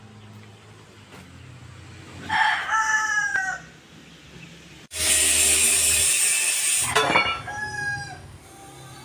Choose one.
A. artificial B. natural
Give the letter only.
B